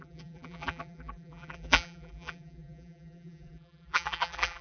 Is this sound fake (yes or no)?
yes